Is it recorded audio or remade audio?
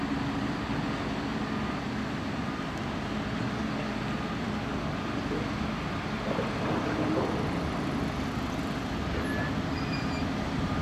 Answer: recorded